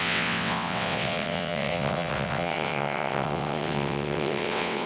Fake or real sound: fake